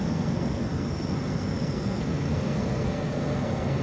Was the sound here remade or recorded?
remade